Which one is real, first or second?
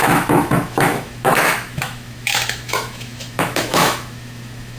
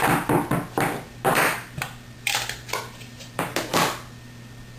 second